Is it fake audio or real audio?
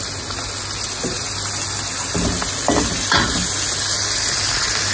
real